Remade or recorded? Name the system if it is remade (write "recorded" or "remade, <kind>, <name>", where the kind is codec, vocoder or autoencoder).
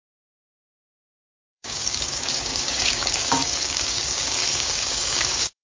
remade, codec, DAC